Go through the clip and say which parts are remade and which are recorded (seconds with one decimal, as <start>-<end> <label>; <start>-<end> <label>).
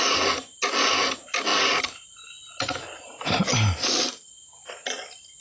0.0-5.4 recorded